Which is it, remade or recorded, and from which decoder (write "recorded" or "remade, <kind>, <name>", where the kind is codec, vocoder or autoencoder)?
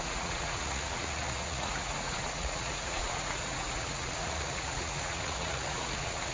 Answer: remade, vocoder, Vocos